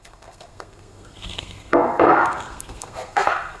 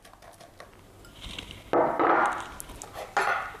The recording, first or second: second